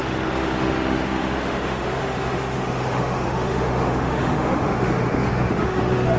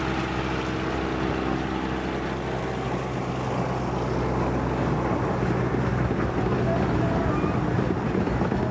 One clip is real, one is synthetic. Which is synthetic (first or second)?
first